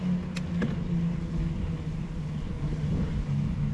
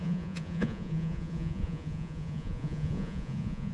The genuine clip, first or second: first